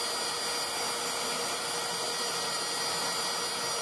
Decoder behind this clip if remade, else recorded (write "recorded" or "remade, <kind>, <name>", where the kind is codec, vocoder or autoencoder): recorded